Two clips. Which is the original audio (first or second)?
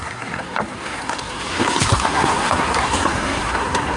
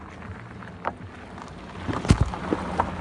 second